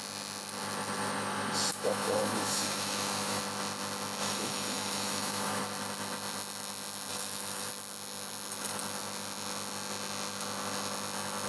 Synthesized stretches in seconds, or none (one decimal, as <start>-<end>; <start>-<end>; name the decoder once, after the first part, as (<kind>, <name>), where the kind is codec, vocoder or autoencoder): 1.7-3.4 (autoencoder, DAC-VAE); 4.2-5.6; 7.1-7.7